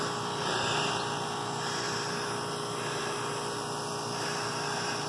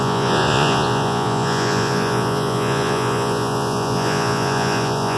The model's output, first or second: second